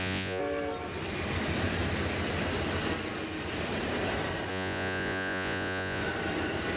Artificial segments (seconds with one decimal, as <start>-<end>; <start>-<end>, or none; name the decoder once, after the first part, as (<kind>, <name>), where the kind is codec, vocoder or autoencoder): 0.0-0.4 (vocoder, Vocos); 4.5-6.0